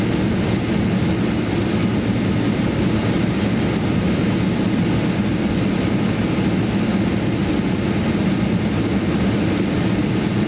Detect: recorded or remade recorded